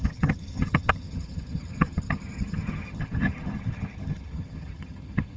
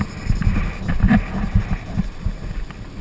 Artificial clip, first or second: first